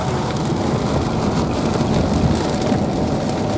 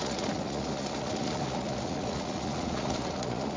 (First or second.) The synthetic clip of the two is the second